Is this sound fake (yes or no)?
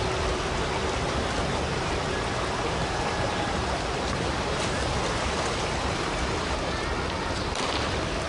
yes